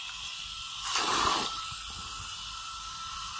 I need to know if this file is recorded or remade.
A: recorded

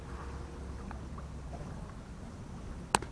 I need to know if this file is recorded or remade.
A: recorded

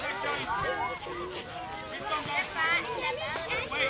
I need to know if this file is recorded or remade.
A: recorded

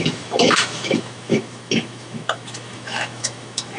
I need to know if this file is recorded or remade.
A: remade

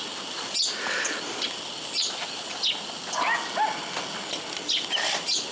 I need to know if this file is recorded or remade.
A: recorded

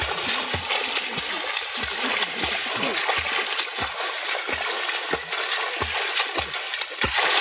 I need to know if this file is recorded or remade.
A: recorded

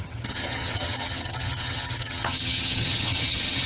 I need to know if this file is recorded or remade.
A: remade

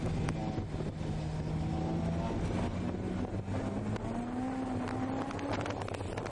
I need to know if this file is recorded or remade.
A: recorded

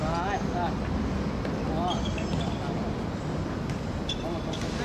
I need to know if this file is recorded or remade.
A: recorded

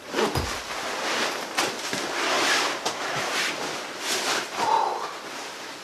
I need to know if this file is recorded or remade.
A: recorded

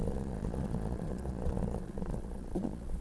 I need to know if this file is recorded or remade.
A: remade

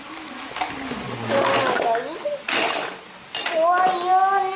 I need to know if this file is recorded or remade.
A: recorded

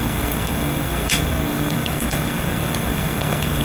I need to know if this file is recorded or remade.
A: remade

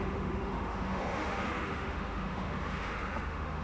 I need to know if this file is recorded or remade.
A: remade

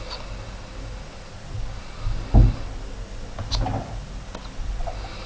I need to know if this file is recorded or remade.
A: recorded